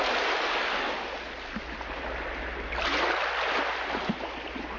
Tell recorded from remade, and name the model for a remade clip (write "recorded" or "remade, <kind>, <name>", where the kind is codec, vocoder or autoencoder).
recorded